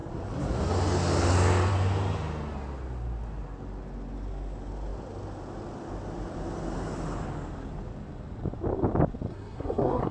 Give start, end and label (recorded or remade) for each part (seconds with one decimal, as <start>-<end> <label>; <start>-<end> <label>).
0.0-9.3 recorded; 9.3-10.1 remade

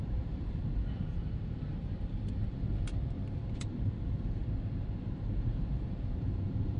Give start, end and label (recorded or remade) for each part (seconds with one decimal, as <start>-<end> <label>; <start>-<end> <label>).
0.0-4.4 remade; 4.4-5.0 recorded; 5.0-6.8 remade